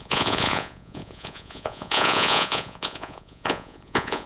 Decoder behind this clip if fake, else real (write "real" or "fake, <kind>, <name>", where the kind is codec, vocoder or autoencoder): fake, vocoder, Vocos